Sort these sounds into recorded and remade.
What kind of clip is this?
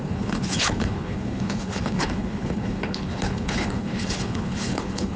remade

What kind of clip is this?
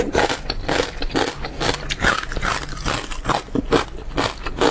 recorded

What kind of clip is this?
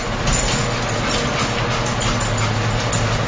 recorded